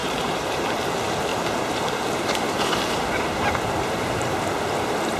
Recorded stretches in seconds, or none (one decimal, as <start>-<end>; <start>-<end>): 0.6-1.3; 4.4-5.2